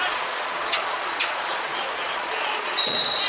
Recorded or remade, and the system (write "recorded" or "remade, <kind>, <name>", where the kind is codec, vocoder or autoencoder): remade, vocoder, Vocos